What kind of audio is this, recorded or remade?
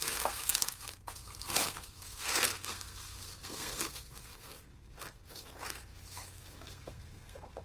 remade